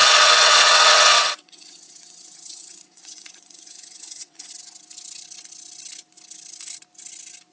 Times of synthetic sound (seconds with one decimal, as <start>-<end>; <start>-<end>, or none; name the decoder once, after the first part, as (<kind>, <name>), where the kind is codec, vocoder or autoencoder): 0.0-4.5 (vocoder, WaveNeXt)